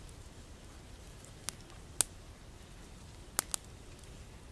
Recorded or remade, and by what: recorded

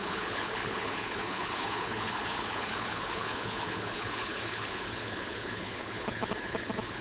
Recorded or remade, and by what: remade, codec, HILCodec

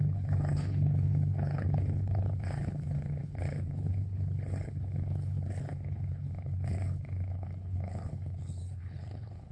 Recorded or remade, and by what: remade, codec, HILCodec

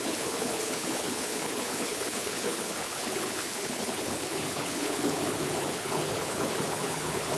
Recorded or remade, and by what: remade, codec, HILCodec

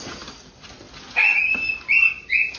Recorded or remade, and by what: recorded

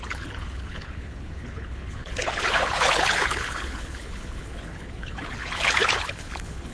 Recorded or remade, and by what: remade, codec, HILCodec